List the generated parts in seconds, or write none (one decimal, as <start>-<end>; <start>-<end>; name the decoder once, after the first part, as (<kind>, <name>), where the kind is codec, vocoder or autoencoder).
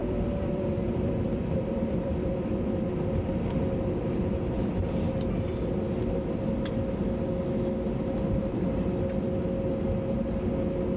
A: 0.0-2.9 (vocoder, BigVGAN v2)